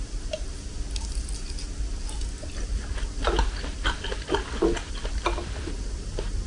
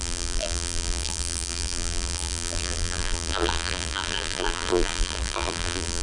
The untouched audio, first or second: first